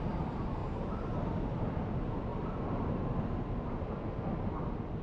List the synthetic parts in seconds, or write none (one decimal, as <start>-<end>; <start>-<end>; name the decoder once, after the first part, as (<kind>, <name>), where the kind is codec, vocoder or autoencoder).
0.6-1.6 (vocoder, BigVGAN v2); 2.3-3.0